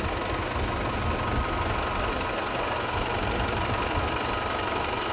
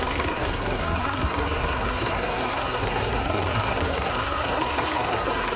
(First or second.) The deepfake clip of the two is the second